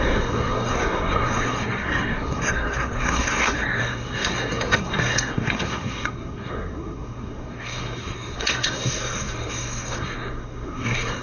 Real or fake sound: fake